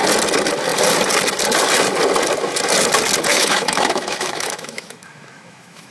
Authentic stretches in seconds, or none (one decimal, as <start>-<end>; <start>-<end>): 0.0-3.3